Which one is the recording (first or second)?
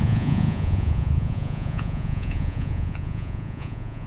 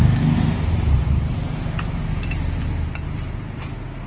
second